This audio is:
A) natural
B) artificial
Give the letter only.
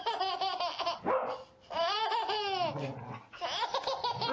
A